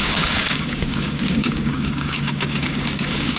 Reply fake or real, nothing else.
fake